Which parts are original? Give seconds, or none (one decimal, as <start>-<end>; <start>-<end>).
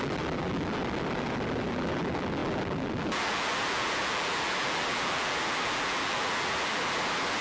0.8-1.6